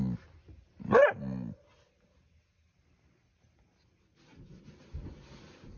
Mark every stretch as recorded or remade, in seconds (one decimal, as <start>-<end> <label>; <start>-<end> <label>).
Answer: 0.0-5.8 recorded

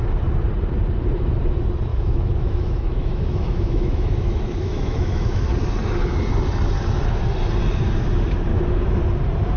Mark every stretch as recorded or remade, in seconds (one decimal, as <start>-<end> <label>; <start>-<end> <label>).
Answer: 0.0-1.9 recorded; 1.9-5.5 remade; 5.5-8.5 recorded; 8.5-9.0 remade; 9.0-9.6 recorded

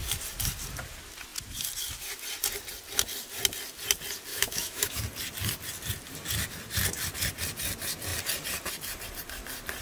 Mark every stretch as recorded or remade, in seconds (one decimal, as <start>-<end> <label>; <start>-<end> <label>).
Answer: 0.0-4.3 recorded; 4.3-5.0 remade; 5.0-9.8 recorded